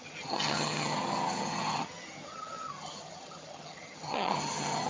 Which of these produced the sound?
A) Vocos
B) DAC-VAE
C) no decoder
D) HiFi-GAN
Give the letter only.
D